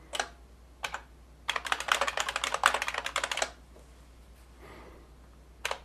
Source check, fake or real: real